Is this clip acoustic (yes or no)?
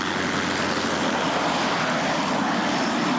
yes